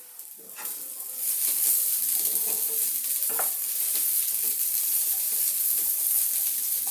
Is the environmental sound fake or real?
real